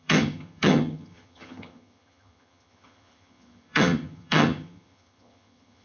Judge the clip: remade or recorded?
remade